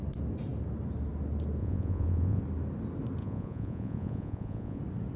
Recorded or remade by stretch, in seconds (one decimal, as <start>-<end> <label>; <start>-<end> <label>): 0.0-1.6 recorded; 1.6-2.4 remade; 2.4-3.2 recorded; 3.2-4.8 remade; 4.8-5.2 recorded